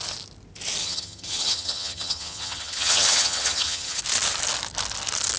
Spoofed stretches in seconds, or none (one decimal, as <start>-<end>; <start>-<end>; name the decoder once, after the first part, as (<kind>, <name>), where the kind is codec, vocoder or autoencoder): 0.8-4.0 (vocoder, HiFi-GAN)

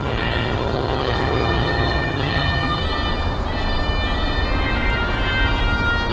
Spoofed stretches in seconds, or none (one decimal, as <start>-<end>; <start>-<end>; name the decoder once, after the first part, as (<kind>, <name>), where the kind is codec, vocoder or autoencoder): 0.0-2.8 (vocoder, HiFi-GAN)

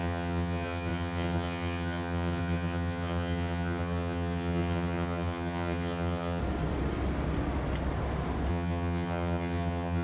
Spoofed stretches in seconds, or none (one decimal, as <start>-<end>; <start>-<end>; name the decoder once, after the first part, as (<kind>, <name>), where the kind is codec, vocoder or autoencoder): 0.0-6.4 (vocoder, HiFi-GAN); 8.5-10.0

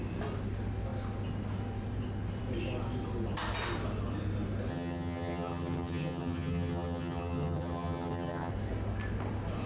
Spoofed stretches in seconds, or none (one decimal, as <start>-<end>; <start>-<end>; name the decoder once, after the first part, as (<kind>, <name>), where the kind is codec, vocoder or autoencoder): 4.7-8.5 (vocoder, HiFi-GAN)

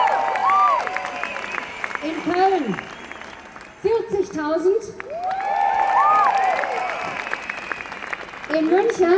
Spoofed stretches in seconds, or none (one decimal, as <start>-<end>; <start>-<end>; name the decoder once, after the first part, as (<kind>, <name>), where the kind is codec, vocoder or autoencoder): none

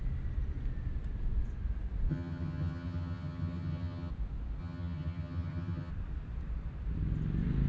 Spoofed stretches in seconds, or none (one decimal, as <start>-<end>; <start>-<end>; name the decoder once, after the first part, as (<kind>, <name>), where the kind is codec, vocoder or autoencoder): 2.1-4.1 (vocoder, HiFi-GAN); 4.6-5.9